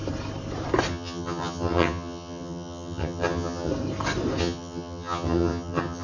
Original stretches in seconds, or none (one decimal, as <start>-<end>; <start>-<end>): 0.0-0.9; 3.7-4.4